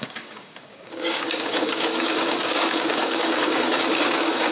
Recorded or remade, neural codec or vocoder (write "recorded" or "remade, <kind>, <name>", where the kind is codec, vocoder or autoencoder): remade, codec, DAC